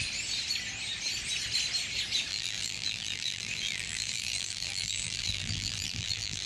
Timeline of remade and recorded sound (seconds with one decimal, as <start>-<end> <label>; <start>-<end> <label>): 0.0-2.3 recorded; 2.3-6.5 remade